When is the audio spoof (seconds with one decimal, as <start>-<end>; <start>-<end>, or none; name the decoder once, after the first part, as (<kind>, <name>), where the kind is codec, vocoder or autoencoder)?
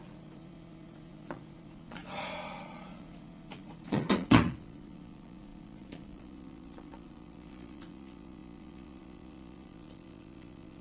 0.0-10.8 (vocoder, Vocos)